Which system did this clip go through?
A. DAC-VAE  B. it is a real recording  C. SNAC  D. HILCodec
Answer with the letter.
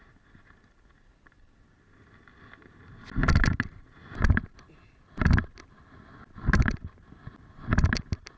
B